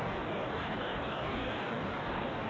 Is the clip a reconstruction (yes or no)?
yes